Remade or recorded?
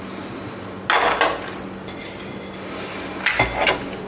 recorded